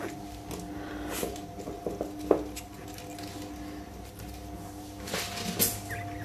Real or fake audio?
real